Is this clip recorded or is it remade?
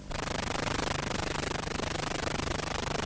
recorded